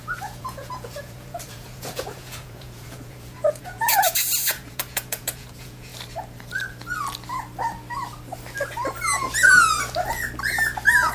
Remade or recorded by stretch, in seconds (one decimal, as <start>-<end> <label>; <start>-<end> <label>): 0.0-5.9 remade; 5.9-11.1 recorded